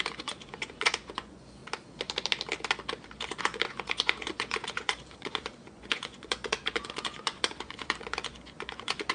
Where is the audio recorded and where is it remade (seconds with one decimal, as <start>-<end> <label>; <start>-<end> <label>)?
0.0-1.6 remade; 1.6-3.4 recorded; 3.4-9.1 remade